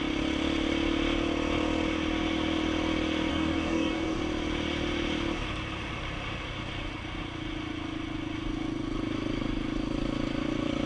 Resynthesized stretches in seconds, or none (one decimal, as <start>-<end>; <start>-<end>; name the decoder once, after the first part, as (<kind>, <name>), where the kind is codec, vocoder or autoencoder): 3.3-4.2 (codec, DAC)